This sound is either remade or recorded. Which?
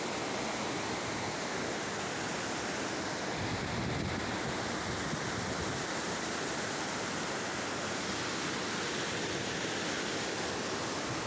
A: recorded